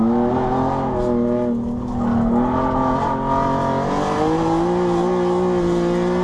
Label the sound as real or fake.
real